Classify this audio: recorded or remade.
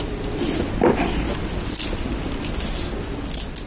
recorded